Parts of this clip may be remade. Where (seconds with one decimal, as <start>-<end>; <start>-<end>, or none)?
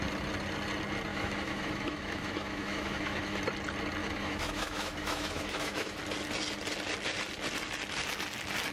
1.1-3.4; 4.0-6.0